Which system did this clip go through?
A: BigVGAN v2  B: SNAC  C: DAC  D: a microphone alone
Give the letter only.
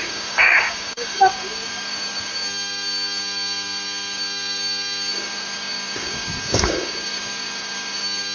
C